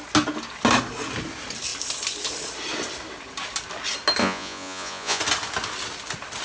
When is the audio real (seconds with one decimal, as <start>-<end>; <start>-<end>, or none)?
0.0-4.2; 5.2-6.4